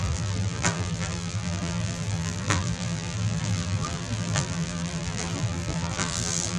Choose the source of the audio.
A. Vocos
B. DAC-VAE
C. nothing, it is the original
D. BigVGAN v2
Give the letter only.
D